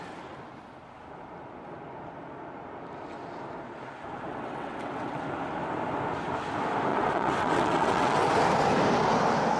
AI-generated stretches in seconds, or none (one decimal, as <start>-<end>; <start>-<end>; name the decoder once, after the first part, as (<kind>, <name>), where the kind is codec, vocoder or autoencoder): 4.3-5.2 (vocoder, WaveNeXt); 6.9-8.3